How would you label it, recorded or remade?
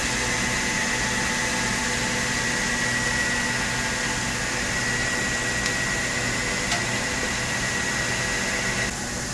recorded